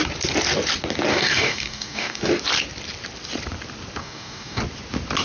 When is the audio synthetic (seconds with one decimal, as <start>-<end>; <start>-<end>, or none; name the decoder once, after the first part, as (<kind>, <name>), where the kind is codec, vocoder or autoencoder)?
1.1-2.2 (codec, DAC); 4.0-4.6